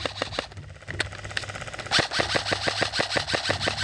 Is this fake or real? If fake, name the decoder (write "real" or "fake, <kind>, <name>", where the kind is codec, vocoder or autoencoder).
real